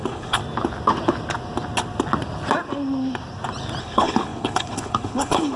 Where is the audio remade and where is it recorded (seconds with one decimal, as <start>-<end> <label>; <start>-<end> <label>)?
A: 0.0-0.4 remade; 0.4-3.8 recorded; 3.8-5.6 remade

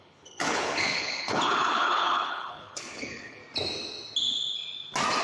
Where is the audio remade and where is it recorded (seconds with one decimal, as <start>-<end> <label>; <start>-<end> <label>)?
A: 0.0-3.4 remade; 3.4-5.2 recorded

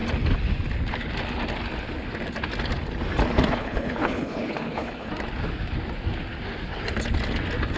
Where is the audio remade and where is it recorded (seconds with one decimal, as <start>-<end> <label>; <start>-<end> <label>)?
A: 0.0-3.6 recorded; 3.6-5.1 remade; 5.1-7.8 recorded

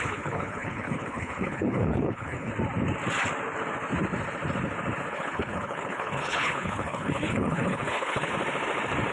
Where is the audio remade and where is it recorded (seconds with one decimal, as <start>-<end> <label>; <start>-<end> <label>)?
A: 0.0-2.5 remade; 2.5-5.1 recorded; 5.1-8.3 remade; 8.3-9.1 recorded